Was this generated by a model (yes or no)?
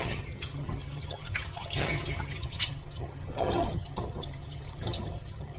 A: yes